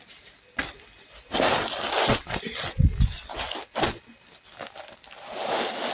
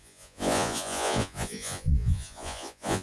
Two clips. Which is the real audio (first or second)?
first